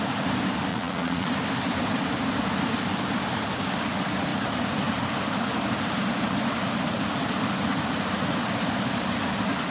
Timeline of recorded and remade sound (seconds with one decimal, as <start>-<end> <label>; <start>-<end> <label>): 0.0-0.7 recorded; 0.7-1.3 remade; 1.3-9.7 recorded